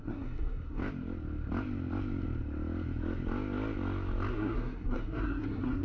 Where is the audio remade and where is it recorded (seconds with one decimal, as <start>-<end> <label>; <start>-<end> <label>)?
0.0-0.8 remade; 0.8-4.3 recorded; 4.3-5.8 remade